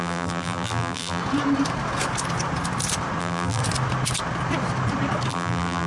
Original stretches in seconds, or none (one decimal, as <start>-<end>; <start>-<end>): 1.2-3.2; 3.6-5.3